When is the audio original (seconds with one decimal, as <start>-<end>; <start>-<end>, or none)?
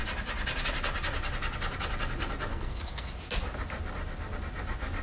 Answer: 0.0-2.5; 3.1-5.0